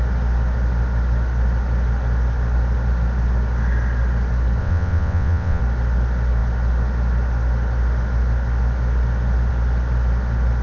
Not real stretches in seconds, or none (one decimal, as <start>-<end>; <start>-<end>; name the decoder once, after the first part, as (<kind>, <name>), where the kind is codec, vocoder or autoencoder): 4.6-5.6 (vocoder, WaveNeXt)